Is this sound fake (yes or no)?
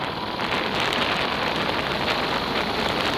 no